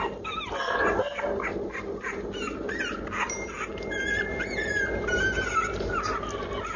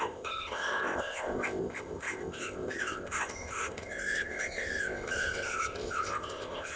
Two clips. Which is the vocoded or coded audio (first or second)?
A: second